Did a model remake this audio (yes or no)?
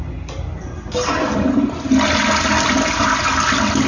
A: no